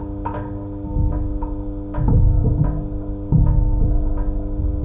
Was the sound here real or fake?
real